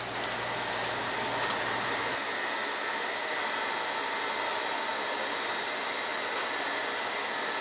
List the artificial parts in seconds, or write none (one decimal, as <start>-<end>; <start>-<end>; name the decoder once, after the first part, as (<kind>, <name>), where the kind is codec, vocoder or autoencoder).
none